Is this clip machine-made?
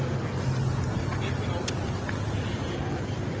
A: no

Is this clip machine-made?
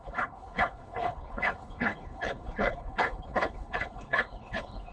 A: yes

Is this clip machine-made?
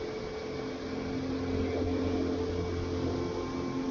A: no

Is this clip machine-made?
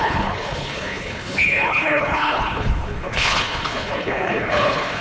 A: yes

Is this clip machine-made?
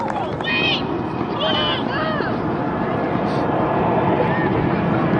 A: no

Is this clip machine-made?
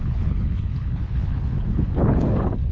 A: yes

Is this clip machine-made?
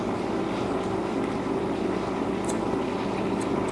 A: no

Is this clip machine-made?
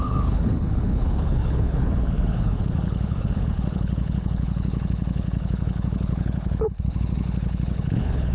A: yes